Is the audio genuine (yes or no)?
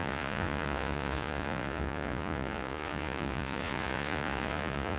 no